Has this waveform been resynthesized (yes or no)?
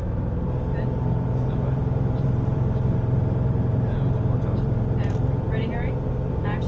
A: yes